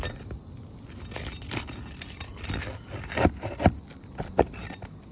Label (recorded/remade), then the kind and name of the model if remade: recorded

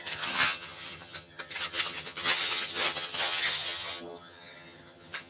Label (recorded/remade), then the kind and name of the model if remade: remade, vocoder, HiFi-GAN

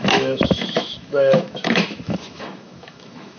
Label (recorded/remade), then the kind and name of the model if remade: remade, autoencoder, DAC-VAE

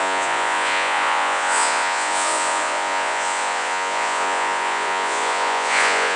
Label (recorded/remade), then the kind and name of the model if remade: remade, vocoder, Vocos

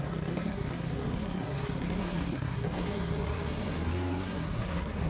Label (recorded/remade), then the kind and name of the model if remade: remade, codec, SNAC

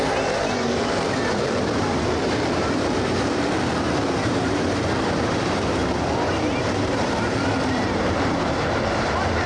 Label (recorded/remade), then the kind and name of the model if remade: remade, vocoder, BigVGAN v2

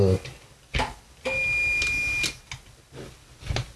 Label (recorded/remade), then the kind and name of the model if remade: recorded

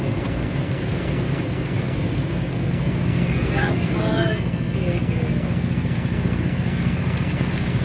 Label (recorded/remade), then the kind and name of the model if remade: remade, codec, SNAC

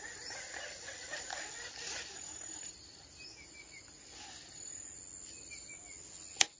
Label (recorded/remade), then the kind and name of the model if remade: recorded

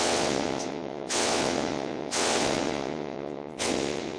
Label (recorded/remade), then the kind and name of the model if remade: remade, vocoder, WaveNeXt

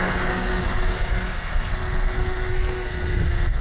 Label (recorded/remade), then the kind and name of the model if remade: remade, codec, SNAC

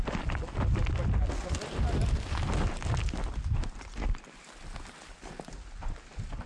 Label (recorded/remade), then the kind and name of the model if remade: recorded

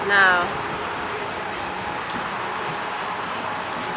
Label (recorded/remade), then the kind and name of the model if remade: recorded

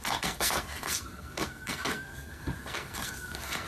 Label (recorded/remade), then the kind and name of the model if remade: remade, codec, SNAC